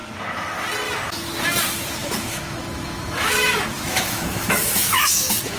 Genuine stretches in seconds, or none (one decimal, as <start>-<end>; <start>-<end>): 0.0-2.0